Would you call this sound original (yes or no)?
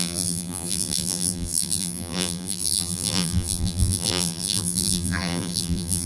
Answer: no